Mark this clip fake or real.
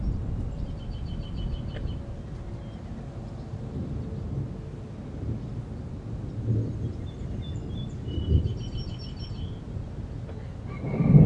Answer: real